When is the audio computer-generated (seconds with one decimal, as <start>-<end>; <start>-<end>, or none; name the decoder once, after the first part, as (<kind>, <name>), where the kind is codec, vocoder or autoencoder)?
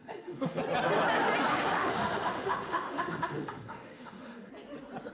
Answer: 0.0-0.6 (autoencoder, DAC-VAE); 1.5-4.5